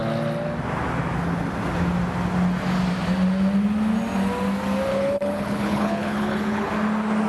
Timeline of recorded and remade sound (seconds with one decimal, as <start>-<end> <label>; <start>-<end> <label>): 0.0-4.9 recorded; 4.9-6.7 remade; 6.7-7.3 recorded